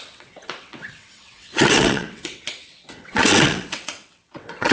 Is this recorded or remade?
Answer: remade